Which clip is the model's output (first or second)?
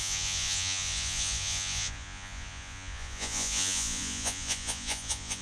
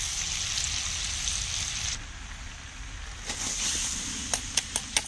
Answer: first